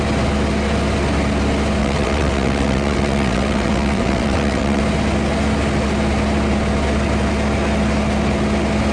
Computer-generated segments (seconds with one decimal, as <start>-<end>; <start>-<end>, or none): 1.8-4.8